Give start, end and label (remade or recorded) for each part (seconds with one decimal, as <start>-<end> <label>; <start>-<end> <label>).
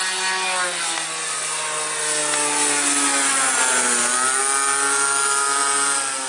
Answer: 0.0-6.3 recorded